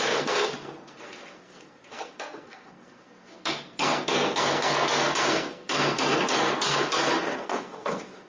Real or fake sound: fake